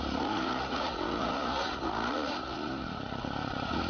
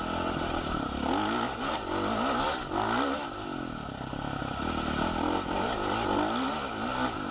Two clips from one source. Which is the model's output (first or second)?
first